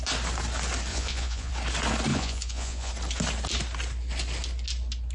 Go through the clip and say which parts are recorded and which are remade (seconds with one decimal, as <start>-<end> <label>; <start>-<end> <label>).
0.0-0.9 recorded; 0.9-1.5 remade; 1.5-2.1 recorded; 2.1-2.9 remade; 2.9-5.1 recorded